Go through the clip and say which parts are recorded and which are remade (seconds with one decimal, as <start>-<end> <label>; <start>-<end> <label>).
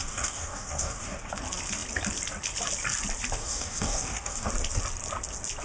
0.0-1.3 remade; 1.3-3.4 recorded; 3.4-4.5 remade; 4.5-5.6 recorded